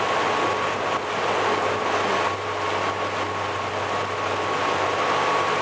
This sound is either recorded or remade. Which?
recorded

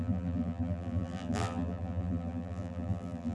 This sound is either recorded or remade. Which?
remade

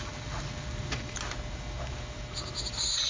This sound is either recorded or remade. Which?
recorded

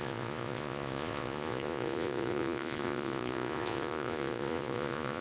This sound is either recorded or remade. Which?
remade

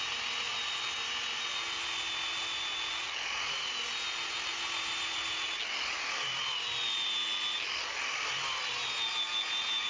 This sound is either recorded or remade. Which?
recorded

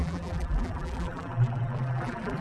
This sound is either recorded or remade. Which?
remade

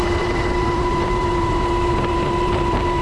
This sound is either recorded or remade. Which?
remade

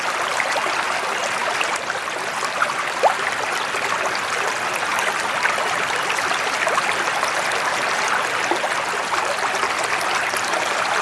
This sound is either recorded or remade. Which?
recorded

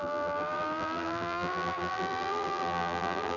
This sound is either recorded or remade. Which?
remade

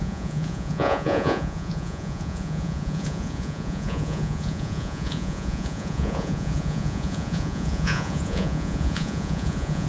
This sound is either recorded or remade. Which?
remade